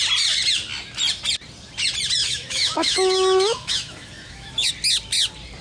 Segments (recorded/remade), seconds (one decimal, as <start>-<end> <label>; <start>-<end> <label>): 0.0-2.2 recorded; 2.2-4.7 remade; 4.7-5.6 recorded